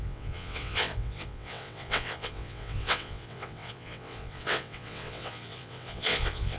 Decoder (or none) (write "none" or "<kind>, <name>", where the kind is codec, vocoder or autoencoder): vocoder, WaveNeXt